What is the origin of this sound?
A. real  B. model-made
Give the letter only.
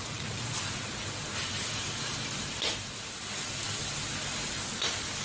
A